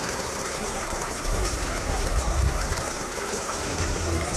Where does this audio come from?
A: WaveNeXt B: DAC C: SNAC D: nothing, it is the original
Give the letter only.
C